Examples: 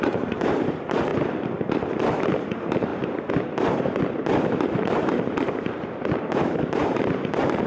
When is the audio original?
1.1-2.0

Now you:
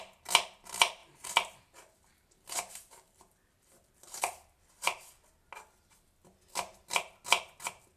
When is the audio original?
0.0-1.0; 4.2-8.0

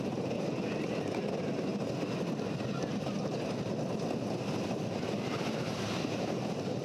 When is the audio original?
1.7-4.5

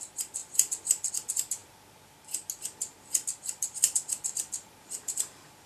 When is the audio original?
0.0-0.4; 1.1-5.7